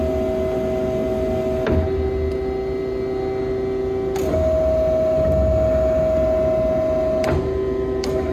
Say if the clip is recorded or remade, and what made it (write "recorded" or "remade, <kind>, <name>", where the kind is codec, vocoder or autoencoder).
recorded